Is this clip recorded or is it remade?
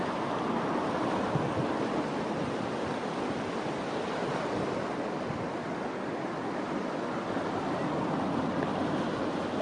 recorded